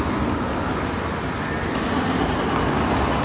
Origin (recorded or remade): recorded